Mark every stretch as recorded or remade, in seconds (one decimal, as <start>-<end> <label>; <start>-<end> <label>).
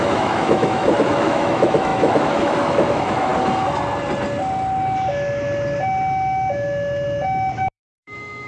0.0-3.3 remade; 3.3-7.7 recorded; 7.7-8.5 remade